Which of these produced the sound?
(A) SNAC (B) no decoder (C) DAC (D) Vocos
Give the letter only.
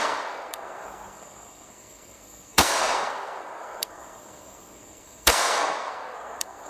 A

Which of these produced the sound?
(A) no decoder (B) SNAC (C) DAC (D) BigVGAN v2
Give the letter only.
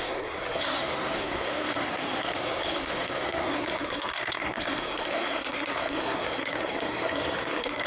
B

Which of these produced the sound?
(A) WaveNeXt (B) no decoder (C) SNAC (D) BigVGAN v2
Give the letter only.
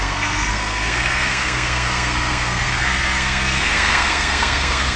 C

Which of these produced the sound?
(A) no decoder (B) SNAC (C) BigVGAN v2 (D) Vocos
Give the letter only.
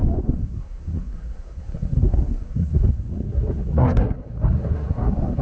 B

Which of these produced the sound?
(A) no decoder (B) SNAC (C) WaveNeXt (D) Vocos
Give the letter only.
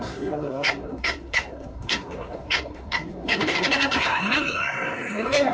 B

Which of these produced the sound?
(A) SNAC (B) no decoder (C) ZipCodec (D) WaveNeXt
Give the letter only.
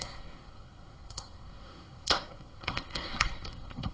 A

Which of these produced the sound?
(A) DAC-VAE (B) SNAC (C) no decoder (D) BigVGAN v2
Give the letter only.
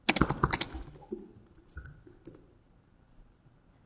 C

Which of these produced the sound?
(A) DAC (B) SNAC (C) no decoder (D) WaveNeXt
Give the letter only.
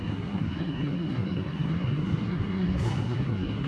B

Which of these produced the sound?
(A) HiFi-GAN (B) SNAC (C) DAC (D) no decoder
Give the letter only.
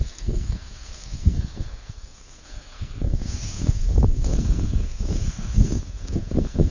B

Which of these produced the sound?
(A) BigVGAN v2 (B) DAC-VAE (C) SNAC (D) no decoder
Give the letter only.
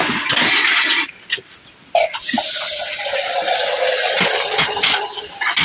D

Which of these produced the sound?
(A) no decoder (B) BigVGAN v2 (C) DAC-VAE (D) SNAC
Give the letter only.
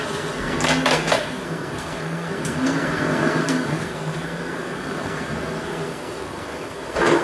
D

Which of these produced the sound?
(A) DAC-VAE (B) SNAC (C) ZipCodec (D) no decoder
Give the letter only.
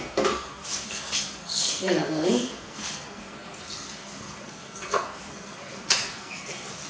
B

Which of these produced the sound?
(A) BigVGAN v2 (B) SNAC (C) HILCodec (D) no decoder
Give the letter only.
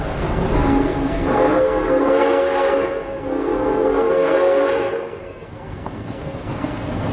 B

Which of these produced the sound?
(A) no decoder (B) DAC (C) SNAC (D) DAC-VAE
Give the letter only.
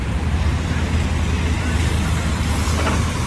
A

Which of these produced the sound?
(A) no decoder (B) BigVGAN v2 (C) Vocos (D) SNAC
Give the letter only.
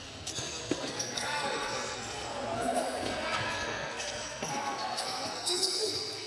D